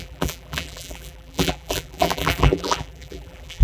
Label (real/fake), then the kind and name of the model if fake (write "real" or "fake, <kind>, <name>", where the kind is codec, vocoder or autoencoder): fake, vocoder, BigVGAN v2